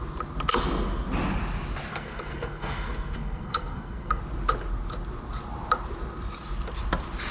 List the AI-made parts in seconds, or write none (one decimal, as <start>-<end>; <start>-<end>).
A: 1.9-4.2